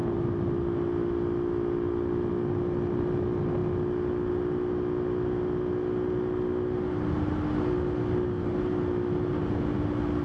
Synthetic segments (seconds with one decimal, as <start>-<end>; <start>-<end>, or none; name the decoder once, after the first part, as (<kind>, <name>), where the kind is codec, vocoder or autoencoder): none